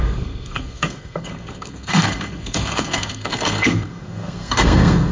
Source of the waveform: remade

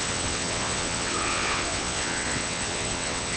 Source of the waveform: remade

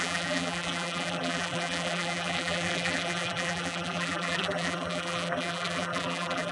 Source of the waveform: remade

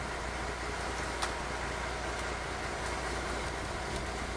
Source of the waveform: recorded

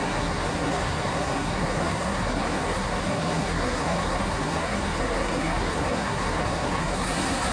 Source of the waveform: remade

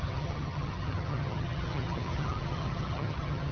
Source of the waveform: remade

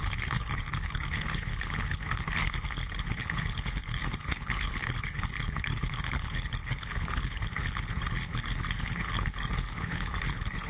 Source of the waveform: remade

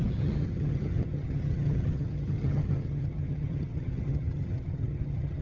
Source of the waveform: remade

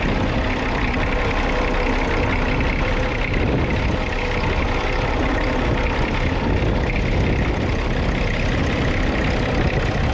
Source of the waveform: recorded